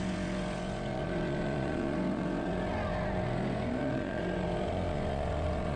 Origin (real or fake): fake